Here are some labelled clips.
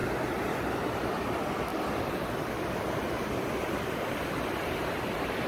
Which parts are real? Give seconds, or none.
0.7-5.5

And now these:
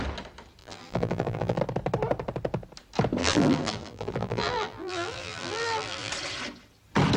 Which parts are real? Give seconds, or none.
0.0-0.6; 1.6-3.2; 6.1-7.2